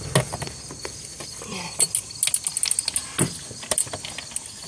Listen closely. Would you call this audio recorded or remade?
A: recorded